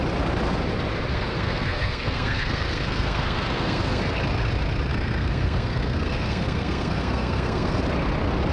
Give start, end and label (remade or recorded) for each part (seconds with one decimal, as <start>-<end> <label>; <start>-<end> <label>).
0.0-1.1 recorded; 1.1-4.0 remade; 4.0-4.9 recorded; 4.9-7.8 remade; 7.8-8.5 recorded